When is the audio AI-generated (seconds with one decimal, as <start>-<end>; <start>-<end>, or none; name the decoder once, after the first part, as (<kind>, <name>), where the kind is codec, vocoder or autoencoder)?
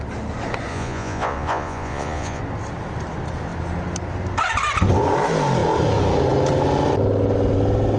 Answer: 0.7-2.4 (vocoder, Vocos)